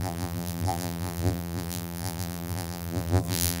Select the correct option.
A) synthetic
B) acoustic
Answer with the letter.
A